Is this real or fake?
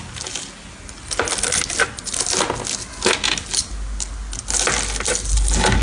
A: real